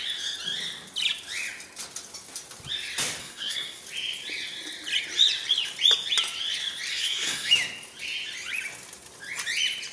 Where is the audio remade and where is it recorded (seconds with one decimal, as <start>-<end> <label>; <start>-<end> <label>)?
0.0-3.2 recorded; 3.2-3.8 remade; 3.8-6.9 recorded; 6.9-7.5 remade; 7.5-9.9 recorded